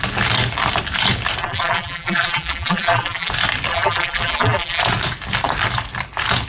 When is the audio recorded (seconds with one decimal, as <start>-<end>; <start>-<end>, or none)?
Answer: 0.0-1.4; 3.3-3.7; 4.8-6.5